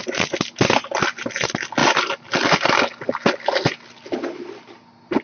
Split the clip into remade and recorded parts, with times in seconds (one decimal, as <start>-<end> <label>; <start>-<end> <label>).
0.0-5.2 recorded